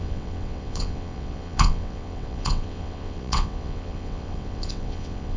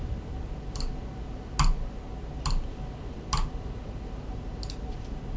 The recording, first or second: second